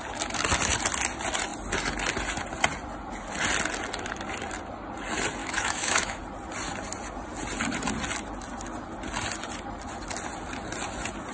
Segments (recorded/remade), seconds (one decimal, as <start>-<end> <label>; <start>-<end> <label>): 0.0-5.4 recorded; 5.4-6.2 remade; 6.2-11.3 recorded